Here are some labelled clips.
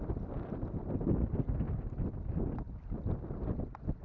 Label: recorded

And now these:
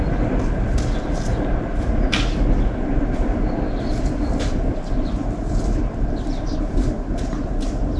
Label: recorded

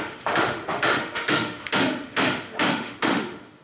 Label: remade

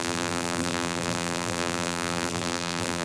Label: remade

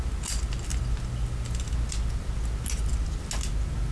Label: recorded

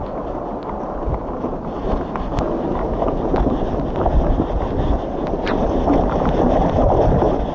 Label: recorded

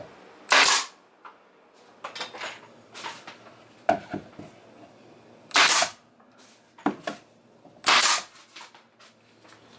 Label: recorded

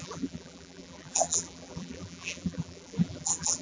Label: remade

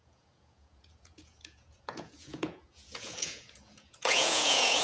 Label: remade